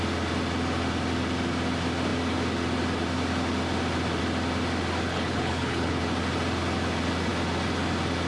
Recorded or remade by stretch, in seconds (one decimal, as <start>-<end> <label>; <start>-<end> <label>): 0.0-5.1 recorded; 5.1-6.0 remade; 6.0-8.3 recorded